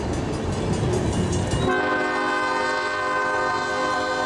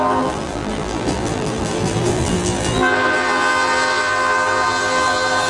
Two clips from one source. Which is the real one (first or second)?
first